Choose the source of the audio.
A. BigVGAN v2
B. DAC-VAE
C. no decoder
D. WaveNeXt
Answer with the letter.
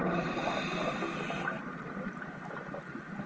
C